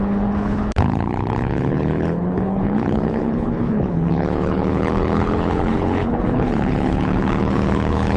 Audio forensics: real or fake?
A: fake